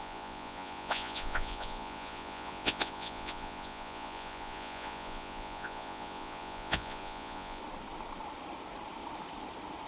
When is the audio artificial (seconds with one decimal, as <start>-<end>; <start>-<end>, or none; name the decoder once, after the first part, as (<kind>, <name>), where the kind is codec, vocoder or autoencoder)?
0.0-7.6 (vocoder, Vocos)